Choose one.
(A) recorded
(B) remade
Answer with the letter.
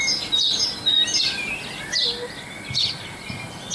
A